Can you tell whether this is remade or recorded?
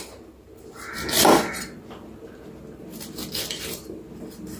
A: recorded